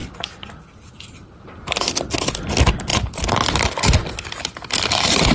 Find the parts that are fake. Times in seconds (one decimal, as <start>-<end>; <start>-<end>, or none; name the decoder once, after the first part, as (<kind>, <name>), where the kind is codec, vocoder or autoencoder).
none